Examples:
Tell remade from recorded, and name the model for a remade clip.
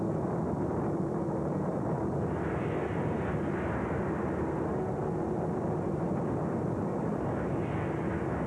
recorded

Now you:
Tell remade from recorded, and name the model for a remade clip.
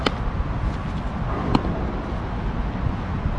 recorded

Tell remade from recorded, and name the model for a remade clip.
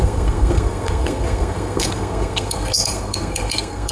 remade, codec, SNAC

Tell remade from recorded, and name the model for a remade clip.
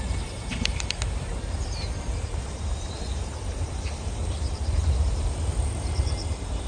remade, vocoder, BigVGAN v2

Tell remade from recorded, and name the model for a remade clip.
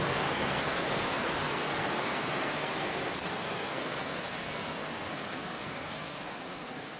remade, codec, SNAC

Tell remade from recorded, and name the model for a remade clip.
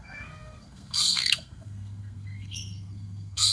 remade, codec, SNAC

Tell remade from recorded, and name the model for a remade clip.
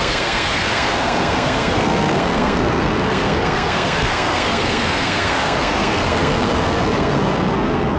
remade, codec, SNAC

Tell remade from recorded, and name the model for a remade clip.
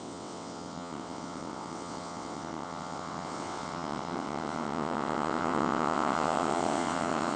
remade, vocoder, WaveNeXt